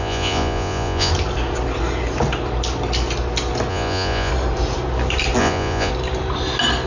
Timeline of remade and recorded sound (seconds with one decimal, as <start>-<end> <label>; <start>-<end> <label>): 0.0-1.1 remade; 1.1-3.7 recorded; 3.7-4.3 remade; 4.3-5.4 recorded; 5.4-5.9 remade; 5.9-6.9 recorded

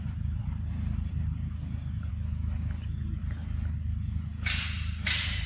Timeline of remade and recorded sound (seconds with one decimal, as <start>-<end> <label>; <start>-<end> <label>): 0.0-5.5 recorded

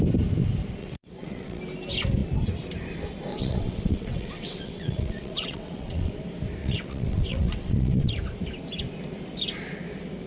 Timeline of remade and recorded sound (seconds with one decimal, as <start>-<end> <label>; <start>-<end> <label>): 0.0-0.8 recorded; 0.8-1.6 remade; 1.6-3.3 recorded; 3.3-6.1 remade; 6.1-6.6 recorded; 6.6-8.1 remade; 8.1-10.3 recorded

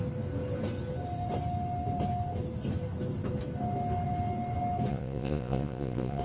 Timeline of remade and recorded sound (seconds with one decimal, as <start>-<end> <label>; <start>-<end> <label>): 0.0-4.9 recorded; 4.9-6.2 remade

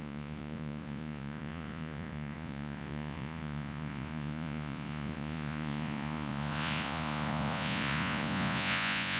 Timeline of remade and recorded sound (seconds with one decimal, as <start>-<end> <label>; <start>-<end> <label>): 0.0-9.2 remade

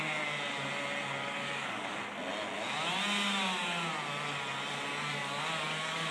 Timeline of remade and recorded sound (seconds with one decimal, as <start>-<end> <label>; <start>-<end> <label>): 0.0-1.2 recorded; 1.2-2.0 remade; 2.0-4.9 recorded; 4.9-6.1 remade

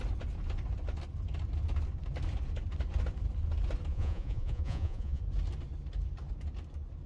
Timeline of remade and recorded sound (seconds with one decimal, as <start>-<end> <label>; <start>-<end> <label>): 0.0-3.9 recorded; 3.9-5.2 remade; 5.2-7.1 recorded

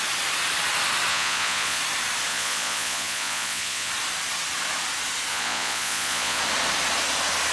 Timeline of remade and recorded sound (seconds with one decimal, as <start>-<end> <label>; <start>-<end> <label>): 0.0-1.1 recorded; 1.1-1.8 remade; 1.8-2.3 recorded; 2.3-3.9 remade; 3.9-5.3 recorded; 5.3-6.4 remade; 6.4-7.5 recorded